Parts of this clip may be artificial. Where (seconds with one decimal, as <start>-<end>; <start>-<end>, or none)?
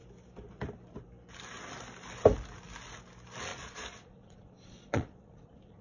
3.5-5.8